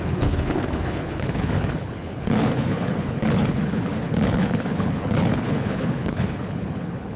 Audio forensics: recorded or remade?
remade